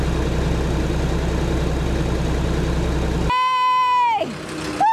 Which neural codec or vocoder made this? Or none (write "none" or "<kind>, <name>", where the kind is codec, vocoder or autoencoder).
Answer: none